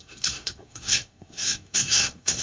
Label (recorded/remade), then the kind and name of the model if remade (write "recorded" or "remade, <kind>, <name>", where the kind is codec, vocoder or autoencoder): remade, codec, SNAC